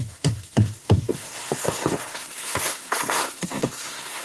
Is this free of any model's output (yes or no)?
no